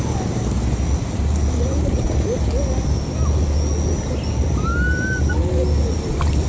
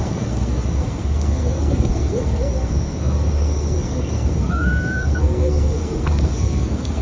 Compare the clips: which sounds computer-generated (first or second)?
second